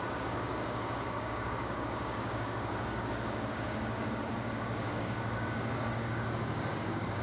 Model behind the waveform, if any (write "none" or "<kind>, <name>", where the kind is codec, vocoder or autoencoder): codec, DAC